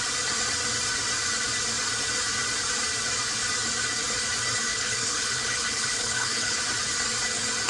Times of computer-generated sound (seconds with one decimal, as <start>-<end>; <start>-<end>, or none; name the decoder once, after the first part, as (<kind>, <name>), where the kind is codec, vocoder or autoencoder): 4.7-6.6 (codec, HILCodec)